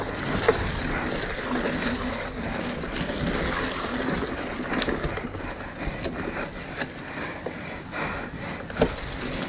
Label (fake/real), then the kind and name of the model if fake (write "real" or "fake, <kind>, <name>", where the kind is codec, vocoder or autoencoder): real